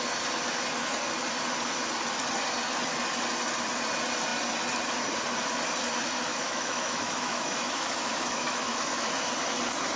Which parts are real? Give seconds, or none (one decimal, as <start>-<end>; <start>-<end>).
0.0-6.3; 9.1-10.0